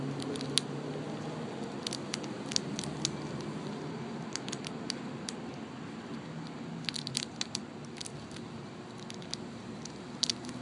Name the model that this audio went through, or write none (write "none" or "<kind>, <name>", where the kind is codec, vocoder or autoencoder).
none